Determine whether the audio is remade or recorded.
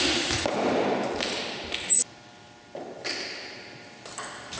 recorded